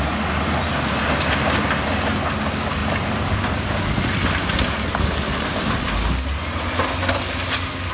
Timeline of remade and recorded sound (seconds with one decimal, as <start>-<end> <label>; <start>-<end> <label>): 0.0-7.9 recorded